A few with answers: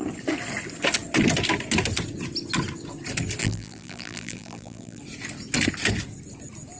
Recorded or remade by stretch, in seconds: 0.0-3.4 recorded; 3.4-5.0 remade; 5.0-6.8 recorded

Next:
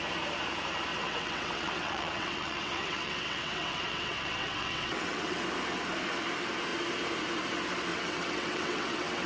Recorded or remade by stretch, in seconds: 0.0-0.9 recorded; 0.9-5.4 remade; 5.4-7.9 recorded; 7.9-9.3 remade

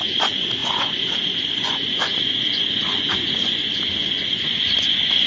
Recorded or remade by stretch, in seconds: 0.0-5.3 remade

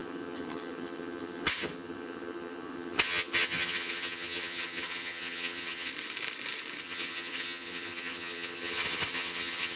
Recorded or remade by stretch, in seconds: 0.0-5.9 remade; 5.9-6.8 recorded; 6.8-9.8 remade

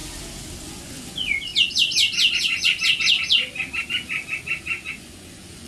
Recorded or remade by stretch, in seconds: 0.0-0.6 recorded; 0.6-1.5 remade; 1.5-4.9 recorded; 4.9-5.7 remade